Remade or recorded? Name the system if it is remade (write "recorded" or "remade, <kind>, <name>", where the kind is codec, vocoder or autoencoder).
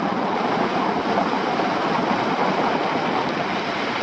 recorded